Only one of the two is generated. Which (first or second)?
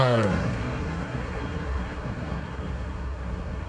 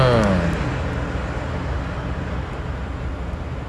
first